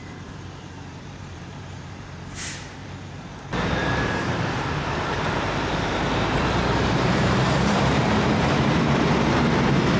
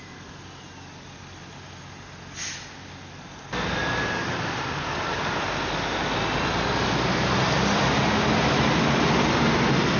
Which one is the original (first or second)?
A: second